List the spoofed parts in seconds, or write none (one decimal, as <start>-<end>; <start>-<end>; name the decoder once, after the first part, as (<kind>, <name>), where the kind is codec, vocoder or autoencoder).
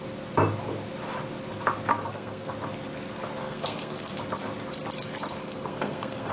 1.9-2.5 (codec, SNAC); 3.4-4.1; 5.4-6.3